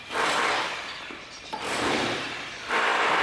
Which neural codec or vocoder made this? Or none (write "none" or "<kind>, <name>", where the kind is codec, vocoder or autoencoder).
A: vocoder, BigVGAN v2